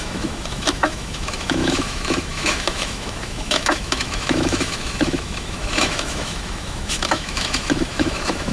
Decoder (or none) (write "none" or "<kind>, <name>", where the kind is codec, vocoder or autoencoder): autoencoder, DAC-VAE